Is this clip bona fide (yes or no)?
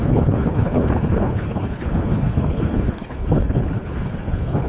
no